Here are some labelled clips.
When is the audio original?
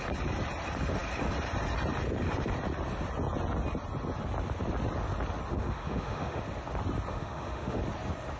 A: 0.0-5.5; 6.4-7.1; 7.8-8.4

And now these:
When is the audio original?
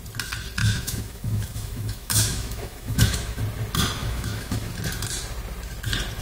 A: 0.0-0.6; 3.4-4.0; 4.7-6.2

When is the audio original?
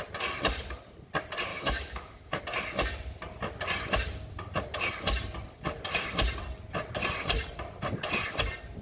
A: 0.0-1.5; 2.4-8.8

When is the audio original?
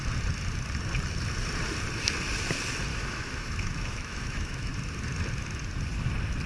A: 0.0-2.9; 4.7-6.5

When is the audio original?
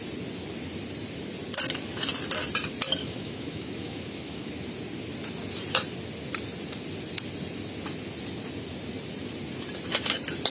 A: 0.0-3.0; 4.5-10.5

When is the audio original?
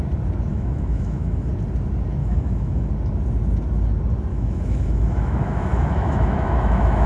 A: 0.0-0.5; 1.5-2.2; 2.9-4.3